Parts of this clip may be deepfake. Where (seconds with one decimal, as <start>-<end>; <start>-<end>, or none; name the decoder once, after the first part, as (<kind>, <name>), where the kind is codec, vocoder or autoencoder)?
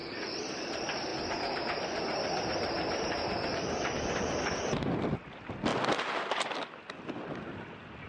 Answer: 0.0-1.1 (vocoder, BigVGAN v2); 4.1-5.7